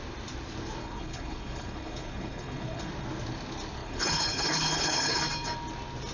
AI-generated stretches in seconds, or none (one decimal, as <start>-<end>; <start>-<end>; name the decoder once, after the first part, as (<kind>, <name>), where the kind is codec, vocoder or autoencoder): 0.8-2.9 (codec, HILCodec); 3.8-5.2